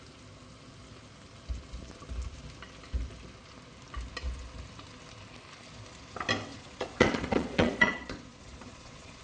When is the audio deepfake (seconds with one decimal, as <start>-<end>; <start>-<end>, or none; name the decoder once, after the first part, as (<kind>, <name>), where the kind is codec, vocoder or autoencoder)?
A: 6.5-9.2 (vocoder, Vocos)